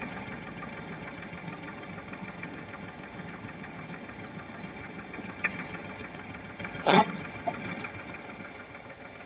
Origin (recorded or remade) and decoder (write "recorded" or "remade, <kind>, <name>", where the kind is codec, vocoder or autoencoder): remade, vocoder, HiFi-GAN